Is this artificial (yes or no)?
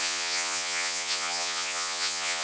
yes